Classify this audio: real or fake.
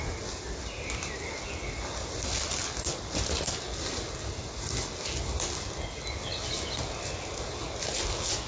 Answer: real